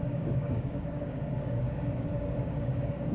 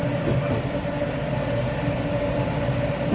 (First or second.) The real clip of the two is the second